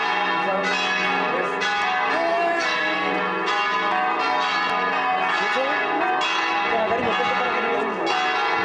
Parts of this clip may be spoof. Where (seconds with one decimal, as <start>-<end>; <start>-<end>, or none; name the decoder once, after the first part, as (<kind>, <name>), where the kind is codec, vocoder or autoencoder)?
2.3-3.1 (codec, SNAC)